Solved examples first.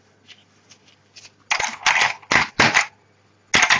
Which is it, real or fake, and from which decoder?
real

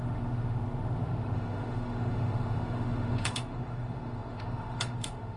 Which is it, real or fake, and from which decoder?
fake, autoencoder, DAC-VAE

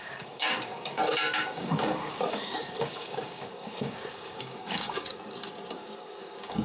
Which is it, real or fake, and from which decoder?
fake, codec, DAC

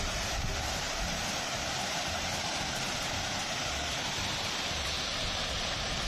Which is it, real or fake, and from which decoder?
fake, vocoder, BigVGAN v2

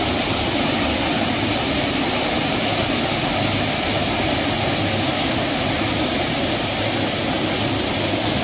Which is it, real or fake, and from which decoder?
real